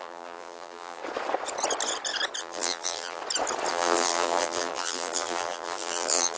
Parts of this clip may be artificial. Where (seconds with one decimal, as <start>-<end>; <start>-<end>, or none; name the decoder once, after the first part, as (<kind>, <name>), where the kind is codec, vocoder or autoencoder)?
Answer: 0.0-1.0 (vocoder, BigVGAN v2); 2.4-3.2; 3.7-6.4